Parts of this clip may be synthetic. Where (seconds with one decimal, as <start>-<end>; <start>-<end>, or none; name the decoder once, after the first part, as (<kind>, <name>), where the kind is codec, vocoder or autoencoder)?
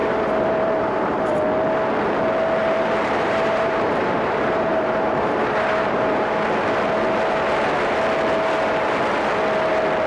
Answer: 0.0-1.3 (vocoder, BigVGAN v2); 2.6-6.3